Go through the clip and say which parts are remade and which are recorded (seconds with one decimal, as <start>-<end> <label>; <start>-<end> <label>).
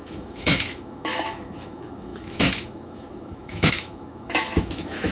0.0-5.1 remade